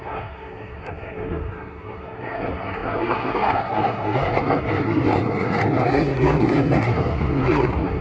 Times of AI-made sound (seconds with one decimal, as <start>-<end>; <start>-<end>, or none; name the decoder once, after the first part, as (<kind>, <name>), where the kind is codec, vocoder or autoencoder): 0.0-8.0 (codec, SNAC)